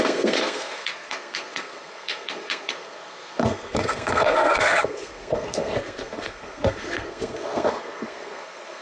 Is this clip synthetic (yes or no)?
yes